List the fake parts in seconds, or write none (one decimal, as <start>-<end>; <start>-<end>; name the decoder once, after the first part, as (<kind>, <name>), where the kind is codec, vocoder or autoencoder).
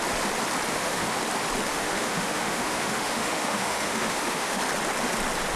0.7-1.2 (autoencoder, DAC-VAE); 1.7-4.6